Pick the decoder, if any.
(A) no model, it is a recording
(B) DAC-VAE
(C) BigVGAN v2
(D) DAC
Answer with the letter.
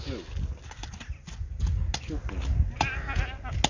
A